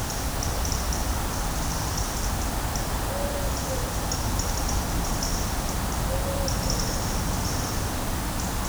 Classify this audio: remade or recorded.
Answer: recorded